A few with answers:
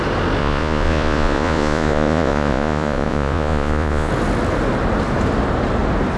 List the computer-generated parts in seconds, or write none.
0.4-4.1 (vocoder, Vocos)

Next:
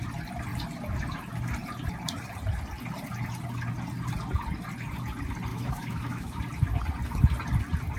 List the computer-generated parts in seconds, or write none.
5.5-6.4 (autoencoder, DAC-VAE)